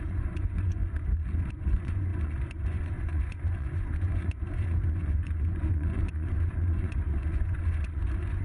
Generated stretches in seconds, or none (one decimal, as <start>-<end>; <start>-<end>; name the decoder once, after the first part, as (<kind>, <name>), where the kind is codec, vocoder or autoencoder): 0.0-0.8 (vocoder, Vocos); 1.5-8.4